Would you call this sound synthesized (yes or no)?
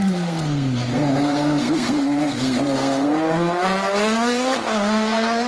yes